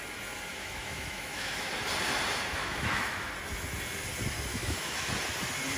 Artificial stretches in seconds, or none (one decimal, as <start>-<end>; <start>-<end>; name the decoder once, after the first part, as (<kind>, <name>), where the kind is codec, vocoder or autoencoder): 0.5-1.7 (autoencoder, DAC-VAE); 2.6-3.3; 4.5-5.1